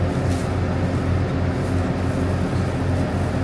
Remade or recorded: recorded